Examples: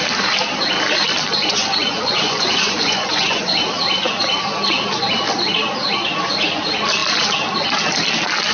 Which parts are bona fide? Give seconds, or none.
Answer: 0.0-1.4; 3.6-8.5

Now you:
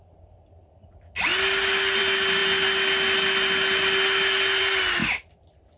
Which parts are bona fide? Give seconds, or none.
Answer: 0.0-5.8